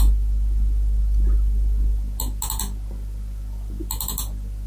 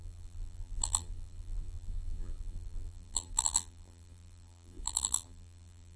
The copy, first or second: second